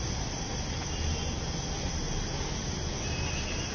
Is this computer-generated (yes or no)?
no